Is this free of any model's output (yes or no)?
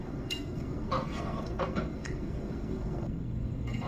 no